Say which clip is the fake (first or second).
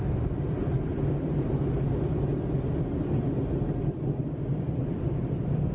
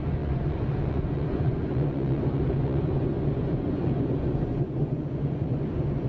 second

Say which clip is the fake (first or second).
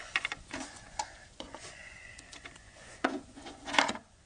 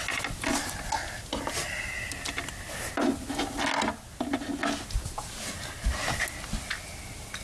first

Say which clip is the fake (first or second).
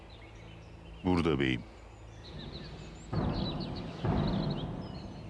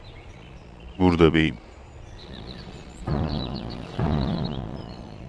second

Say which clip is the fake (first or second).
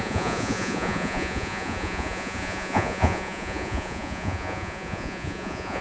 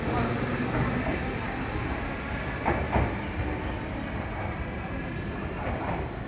first